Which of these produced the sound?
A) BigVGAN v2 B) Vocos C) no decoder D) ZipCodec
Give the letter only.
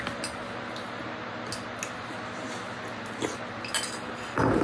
C